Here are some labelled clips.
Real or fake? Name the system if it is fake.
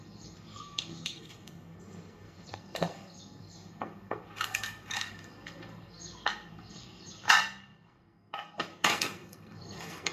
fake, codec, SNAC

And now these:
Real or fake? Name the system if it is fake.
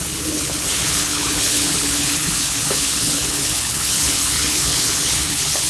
fake, codec, HILCodec